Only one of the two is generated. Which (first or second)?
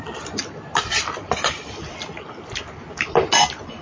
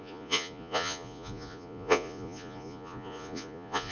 second